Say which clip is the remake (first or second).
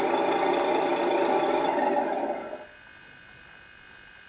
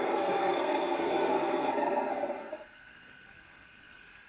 second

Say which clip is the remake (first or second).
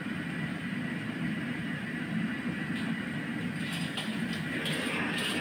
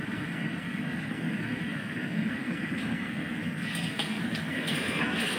second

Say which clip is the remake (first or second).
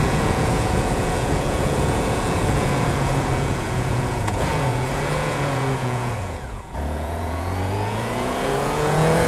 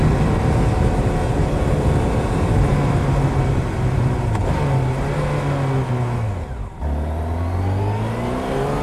first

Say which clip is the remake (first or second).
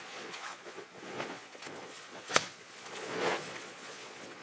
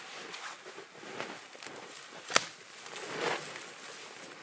first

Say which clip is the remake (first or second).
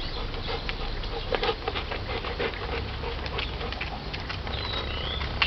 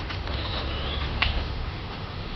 second